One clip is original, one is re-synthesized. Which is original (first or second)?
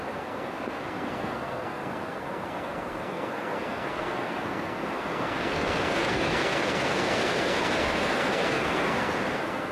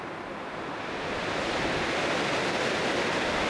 second